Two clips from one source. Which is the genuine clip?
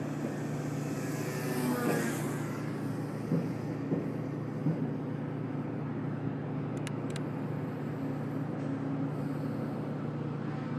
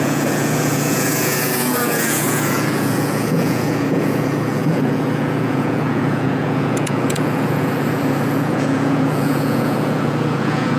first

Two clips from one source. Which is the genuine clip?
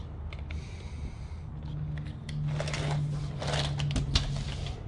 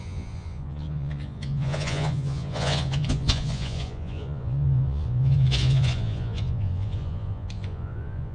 first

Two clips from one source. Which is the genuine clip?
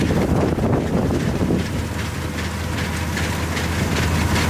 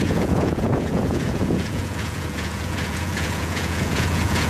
first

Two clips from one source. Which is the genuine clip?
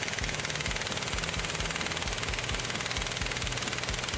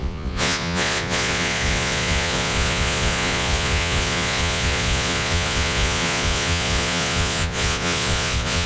first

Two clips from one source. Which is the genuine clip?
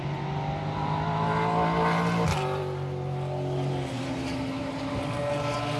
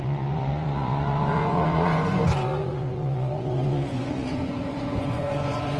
first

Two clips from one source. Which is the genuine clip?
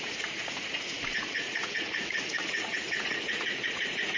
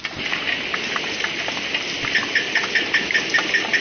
second